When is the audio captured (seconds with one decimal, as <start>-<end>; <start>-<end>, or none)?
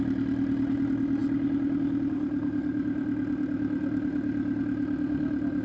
0.0-5.6